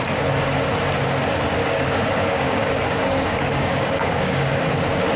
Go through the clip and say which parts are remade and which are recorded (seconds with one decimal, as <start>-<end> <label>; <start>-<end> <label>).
0.0-1.6 recorded; 1.6-4.6 remade; 4.6-5.2 recorded